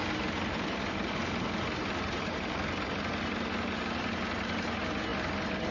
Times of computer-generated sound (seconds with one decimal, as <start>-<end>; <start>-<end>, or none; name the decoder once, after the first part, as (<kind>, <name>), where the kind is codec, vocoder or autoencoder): none